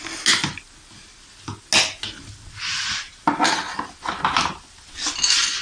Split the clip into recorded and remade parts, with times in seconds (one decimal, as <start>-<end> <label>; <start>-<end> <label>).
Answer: 0.0-5.6 recorded